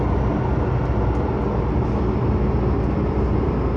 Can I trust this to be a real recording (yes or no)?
yes